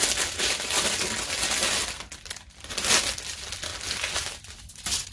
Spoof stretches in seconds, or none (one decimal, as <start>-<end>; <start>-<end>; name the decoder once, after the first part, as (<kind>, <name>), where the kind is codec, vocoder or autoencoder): none